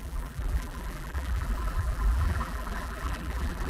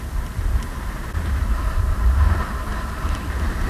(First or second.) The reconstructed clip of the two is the first